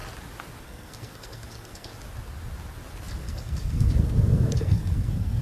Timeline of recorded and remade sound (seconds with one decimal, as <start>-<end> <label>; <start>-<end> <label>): 0.0-0.6 recorded; 0.6-1.9 remade; 1.9-3.2 recorded; 3.2-5.4 remade